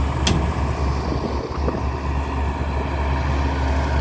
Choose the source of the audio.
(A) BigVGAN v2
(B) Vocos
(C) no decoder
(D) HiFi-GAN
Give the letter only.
C